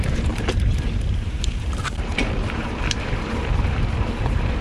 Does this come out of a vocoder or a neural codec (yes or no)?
yes